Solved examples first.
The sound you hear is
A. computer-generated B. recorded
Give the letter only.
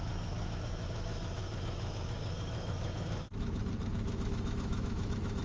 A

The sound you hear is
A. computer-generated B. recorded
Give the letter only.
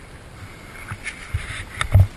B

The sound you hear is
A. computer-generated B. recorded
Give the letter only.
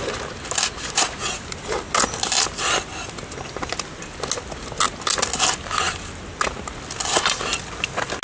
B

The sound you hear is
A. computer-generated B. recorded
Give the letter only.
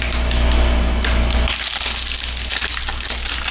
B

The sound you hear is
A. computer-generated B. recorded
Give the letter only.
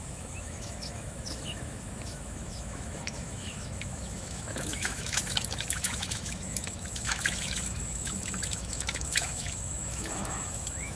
A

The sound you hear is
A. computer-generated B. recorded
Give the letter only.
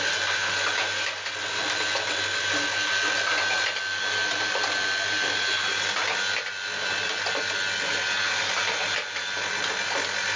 B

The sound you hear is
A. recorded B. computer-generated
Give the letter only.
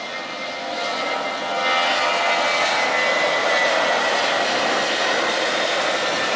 A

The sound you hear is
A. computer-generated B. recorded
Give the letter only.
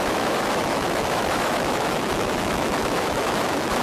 A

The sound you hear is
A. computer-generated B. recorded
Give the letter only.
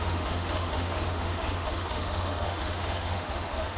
A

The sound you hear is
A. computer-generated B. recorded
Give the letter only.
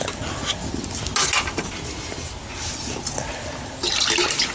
B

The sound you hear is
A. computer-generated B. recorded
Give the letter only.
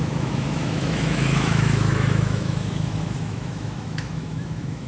A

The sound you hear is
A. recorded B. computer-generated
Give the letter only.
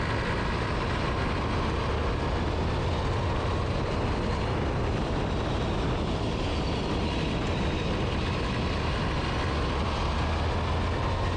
A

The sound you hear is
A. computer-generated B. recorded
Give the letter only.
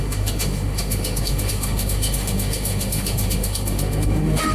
A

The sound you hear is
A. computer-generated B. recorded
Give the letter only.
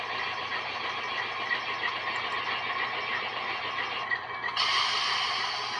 B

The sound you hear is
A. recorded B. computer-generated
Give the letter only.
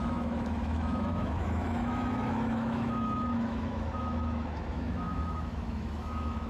B